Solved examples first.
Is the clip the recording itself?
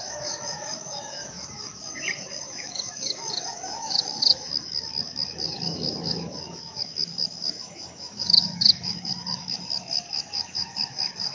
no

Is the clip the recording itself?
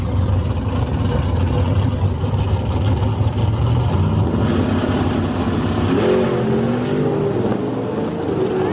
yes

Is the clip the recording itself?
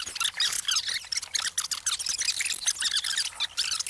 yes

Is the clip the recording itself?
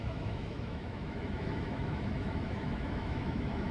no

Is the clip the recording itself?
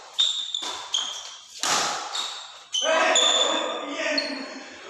yes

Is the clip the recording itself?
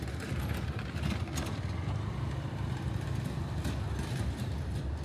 yes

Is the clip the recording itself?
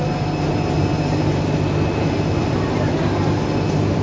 yes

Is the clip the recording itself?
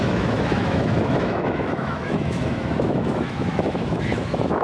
no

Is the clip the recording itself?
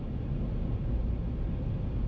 yes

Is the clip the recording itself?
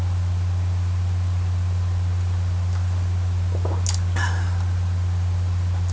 yes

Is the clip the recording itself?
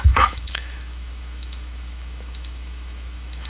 no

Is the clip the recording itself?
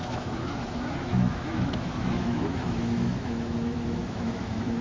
no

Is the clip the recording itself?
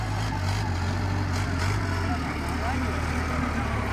yes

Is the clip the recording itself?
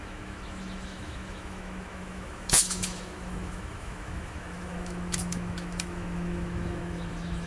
no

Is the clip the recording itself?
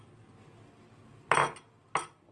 yes